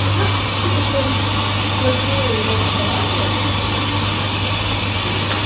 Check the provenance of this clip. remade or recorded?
recorded